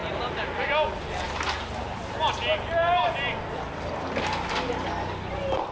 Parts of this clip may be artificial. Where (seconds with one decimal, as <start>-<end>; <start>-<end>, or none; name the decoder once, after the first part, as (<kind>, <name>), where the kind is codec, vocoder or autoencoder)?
none

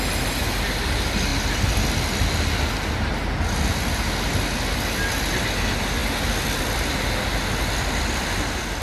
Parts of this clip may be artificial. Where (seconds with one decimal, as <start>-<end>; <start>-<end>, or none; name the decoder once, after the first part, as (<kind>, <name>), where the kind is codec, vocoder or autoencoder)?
none